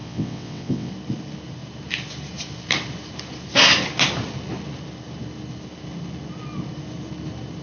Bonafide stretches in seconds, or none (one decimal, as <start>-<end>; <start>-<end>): 0.9-7.6

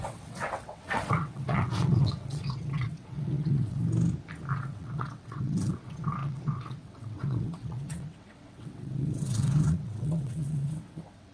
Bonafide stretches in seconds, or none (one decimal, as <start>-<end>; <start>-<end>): 3.8-4.6

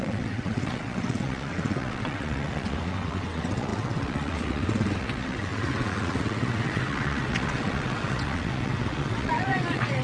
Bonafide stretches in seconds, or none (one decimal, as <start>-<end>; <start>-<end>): none

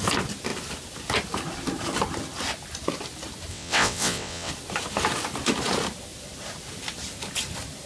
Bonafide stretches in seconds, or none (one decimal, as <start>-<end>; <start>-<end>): 0.0-3.5; 4.5-7.9

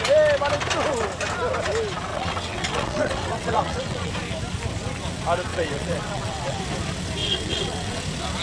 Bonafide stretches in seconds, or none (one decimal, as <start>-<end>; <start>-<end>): 0.0-2.1; 4.1-5.5; 6.6-7.2; 8.0-8.4

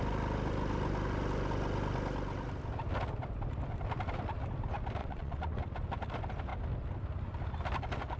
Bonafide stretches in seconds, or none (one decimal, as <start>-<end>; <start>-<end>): 0.0-5.0; 5.6-8.2